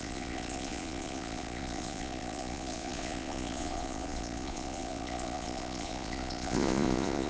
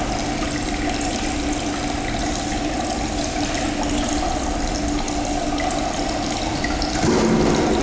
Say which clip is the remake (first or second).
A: first